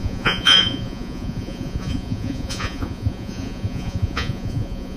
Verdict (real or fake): fake